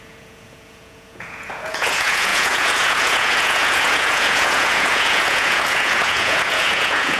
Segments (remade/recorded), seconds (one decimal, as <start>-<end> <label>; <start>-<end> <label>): 0.0-7.2 remade